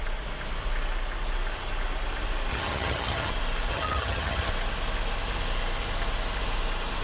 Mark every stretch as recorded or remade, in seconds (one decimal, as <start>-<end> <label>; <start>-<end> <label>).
0.0-2.5 recorded; 2.5-3.3 remade; 3.3-3.7 recorded; 3.7-4.5 remade; 4.5-7.0 recorded